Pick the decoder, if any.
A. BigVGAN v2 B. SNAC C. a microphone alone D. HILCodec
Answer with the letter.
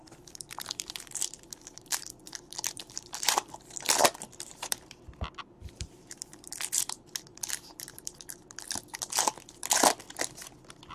A